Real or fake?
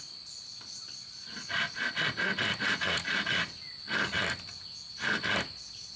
real